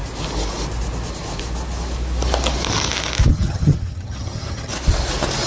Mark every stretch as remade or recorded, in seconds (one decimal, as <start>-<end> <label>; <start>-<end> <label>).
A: 0.0-3.3 recorded; 3.3-4.7 remade; 4.7-5.5 recorded